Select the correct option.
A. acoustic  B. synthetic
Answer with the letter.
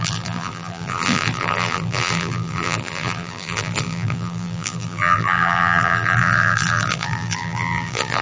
B